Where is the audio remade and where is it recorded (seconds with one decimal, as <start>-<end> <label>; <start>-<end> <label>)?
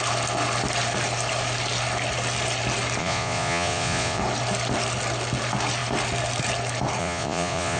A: 0.0-3.0 recorded; 3.0-4.2 remade; 4.2-7.0 recorded; 7.0-7.8 remade